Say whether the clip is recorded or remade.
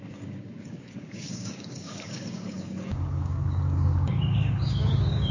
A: remade